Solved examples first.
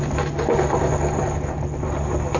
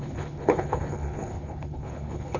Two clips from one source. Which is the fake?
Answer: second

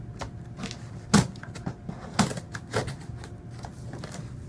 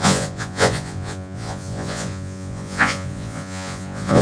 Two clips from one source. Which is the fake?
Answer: second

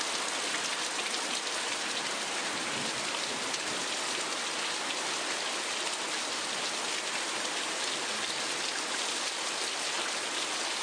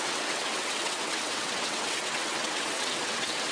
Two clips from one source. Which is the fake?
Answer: second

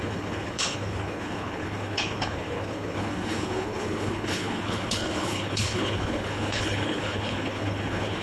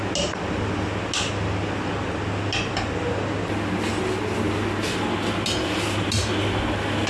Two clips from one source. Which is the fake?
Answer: first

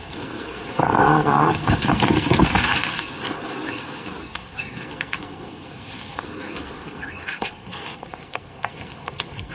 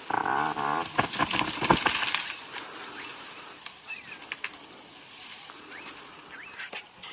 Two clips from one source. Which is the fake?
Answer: first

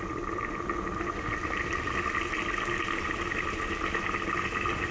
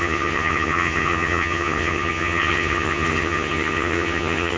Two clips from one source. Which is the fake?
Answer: second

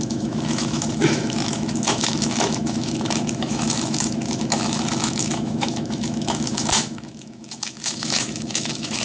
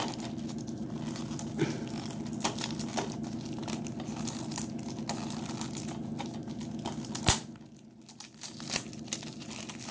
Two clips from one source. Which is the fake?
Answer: first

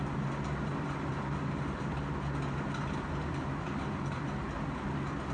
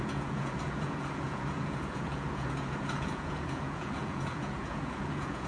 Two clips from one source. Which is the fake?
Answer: second